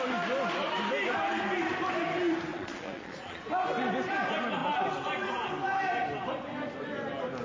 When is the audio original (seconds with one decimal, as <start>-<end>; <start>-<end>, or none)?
0.0-2.5; 3.4-7.4